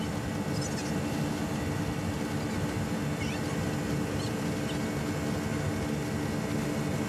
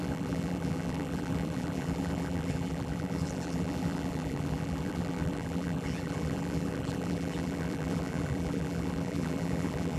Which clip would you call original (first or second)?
first